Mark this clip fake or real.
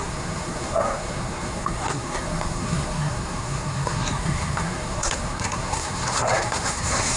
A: fake